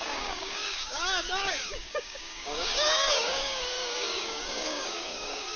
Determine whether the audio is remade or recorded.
remade